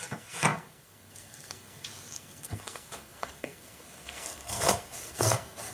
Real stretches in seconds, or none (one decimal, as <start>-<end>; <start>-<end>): none